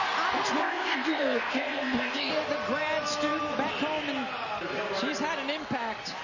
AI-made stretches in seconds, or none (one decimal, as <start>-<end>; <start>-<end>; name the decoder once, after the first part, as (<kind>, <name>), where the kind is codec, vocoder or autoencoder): 0.6-2.3 (codec, ZipCodec)